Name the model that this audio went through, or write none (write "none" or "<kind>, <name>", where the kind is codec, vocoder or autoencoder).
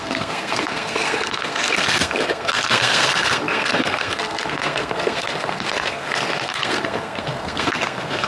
codec, SNAC